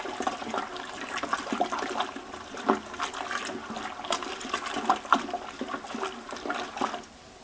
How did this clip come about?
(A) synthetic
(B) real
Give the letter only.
B